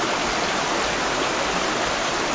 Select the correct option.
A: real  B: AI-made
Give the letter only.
A